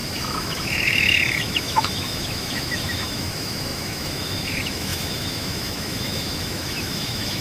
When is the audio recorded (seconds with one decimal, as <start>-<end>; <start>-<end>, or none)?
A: none